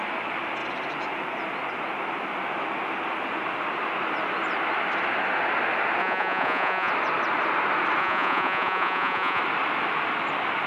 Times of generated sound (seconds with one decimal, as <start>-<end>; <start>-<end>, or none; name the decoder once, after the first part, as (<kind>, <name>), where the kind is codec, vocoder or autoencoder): 6.0-6.9 (vocoder, Vocos); 8.0-9.4